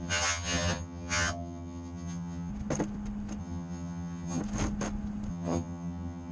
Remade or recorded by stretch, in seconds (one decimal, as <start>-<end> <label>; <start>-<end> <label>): 0.0-2.5 remade; 2.5-3.4 recorded; 3.4-4.4 remade; 4.4-5.3 recorded; 5.3-6.3 remade